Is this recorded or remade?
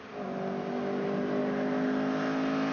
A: recorded